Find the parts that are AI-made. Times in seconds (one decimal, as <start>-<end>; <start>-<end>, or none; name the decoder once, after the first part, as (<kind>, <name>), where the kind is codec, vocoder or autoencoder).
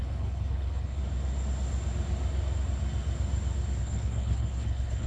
0.0-1.0 (codec, HILCodec); 3.8-5.1